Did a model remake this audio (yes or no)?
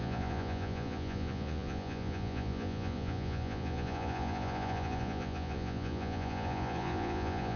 yes